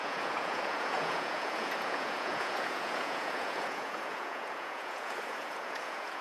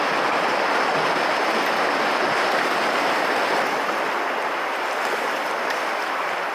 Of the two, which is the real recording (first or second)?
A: second